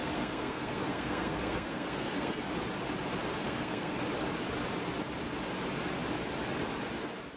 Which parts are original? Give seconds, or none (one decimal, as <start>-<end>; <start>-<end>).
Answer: 2.4-3.3; 4.0-7.4